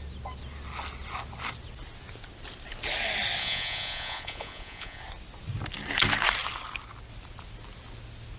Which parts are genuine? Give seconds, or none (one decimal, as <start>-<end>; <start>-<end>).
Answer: 0.0-3.4; 5.0-8.4